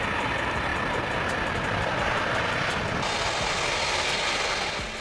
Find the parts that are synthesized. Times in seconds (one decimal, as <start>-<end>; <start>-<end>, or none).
none